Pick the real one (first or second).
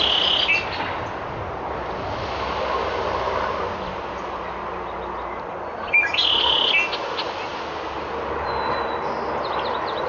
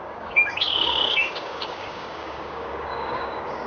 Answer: first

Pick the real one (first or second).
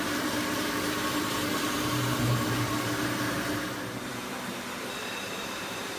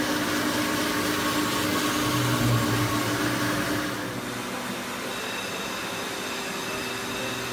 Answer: second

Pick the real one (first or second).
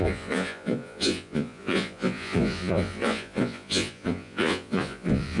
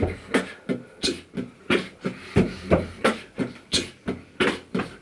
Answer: second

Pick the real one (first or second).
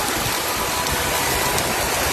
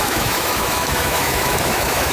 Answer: first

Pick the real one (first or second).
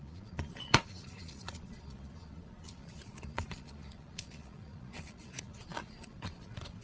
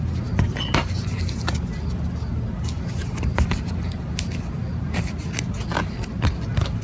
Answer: second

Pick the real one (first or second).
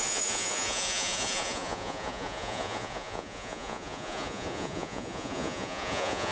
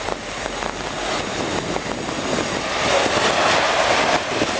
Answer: second